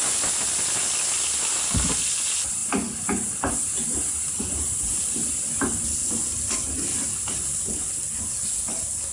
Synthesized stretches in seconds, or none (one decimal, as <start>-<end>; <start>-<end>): 6.9-7.9